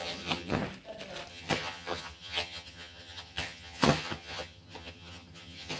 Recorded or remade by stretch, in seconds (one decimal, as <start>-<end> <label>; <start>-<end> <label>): 0.0-0.6 remade; 0.6-1.3 recorded; 1.3-5.8 remade